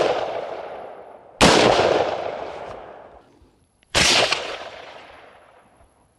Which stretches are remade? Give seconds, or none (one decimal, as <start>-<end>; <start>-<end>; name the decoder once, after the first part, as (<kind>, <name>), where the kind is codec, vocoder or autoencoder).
0.0-1.2 (vocoder, Vocos); 3.6-6.2